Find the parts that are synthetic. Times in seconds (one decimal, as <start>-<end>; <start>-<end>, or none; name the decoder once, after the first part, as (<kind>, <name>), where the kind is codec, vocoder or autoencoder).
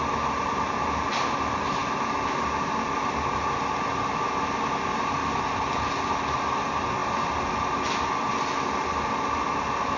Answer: none